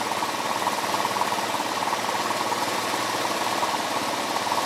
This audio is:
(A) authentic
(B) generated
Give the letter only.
A